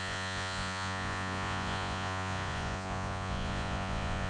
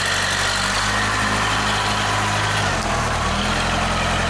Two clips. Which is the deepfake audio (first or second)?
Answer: first